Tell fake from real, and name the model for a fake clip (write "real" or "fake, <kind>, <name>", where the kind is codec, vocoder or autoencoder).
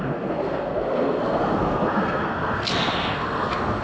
fake, codec, SNAC